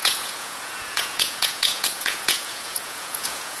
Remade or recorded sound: remade